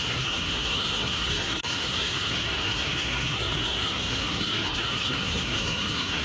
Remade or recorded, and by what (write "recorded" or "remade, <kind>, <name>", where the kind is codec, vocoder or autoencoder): remade, codec, SNAC